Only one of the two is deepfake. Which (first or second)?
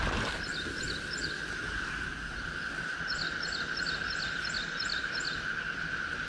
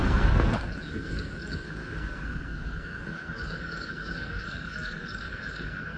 second